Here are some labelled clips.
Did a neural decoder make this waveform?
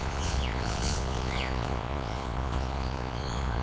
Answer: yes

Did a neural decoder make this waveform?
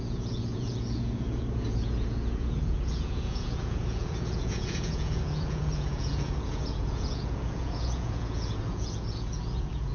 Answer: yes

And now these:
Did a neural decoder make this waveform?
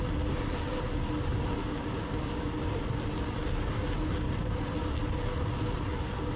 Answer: no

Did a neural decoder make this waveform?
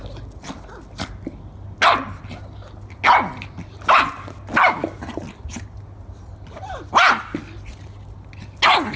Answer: no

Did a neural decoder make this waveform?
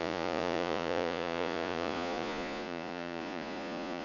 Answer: yes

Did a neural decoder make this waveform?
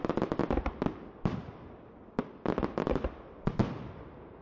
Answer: no